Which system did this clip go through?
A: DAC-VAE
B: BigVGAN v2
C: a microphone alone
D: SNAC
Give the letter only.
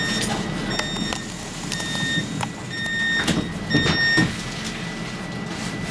C